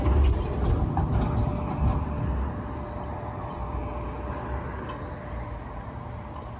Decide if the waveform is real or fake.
real